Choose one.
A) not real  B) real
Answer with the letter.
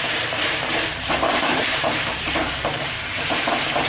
A